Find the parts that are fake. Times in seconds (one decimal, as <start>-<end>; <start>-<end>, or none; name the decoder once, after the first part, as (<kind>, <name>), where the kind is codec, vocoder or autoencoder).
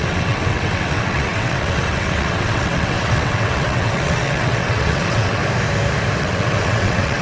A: 0.0-5.4 (vocoder, WaveNeXt); 6.2-7.2